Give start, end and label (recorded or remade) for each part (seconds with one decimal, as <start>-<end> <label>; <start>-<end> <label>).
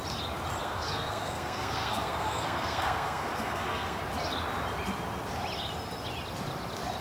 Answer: 0.0-0.6 recorded; 0.6-4.0 remade; 4.0-7.0 recorded